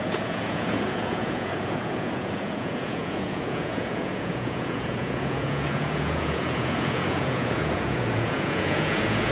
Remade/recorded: remade